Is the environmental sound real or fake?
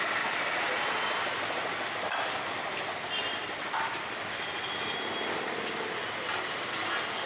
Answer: real